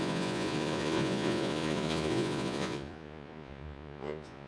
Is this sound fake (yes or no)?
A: yes